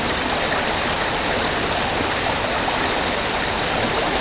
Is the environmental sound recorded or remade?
recorded